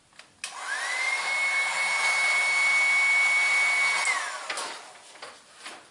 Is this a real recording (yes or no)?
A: yes